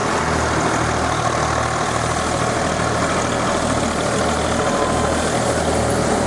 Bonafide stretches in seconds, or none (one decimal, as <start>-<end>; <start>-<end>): 0.0-6.3